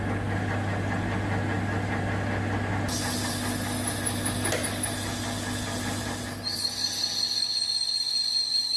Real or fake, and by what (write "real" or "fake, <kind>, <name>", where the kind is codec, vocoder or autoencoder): real